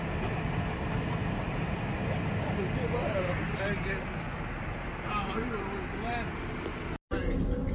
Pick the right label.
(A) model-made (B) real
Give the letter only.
B